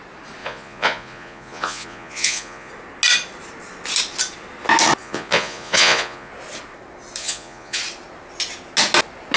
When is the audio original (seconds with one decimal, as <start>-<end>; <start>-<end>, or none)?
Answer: 0.0-0.4; 2.7-5.0; 6.3-7.2; 7.8-9.4